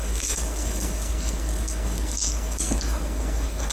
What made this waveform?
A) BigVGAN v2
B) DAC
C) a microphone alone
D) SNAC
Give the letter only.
D